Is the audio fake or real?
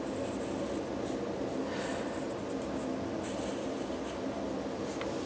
real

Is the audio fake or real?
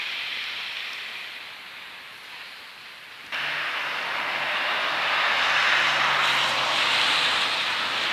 real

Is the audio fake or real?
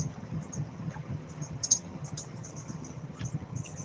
fake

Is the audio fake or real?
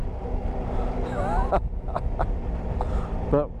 real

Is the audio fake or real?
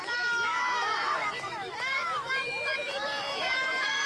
fake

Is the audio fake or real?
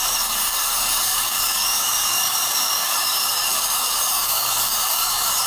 fake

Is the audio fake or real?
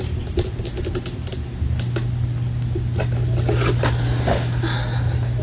real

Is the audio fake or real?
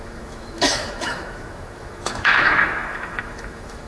fake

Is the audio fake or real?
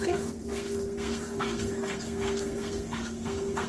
fake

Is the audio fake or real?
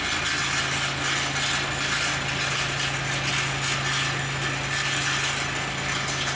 real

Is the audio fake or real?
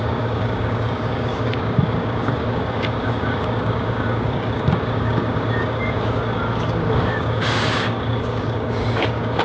fake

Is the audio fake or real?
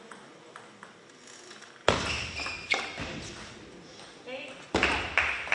real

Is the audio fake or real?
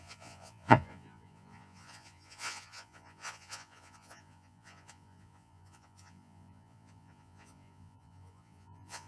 fake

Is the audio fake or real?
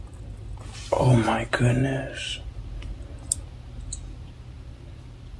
real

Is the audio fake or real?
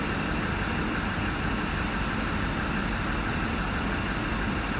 real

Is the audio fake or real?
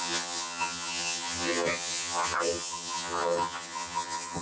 fake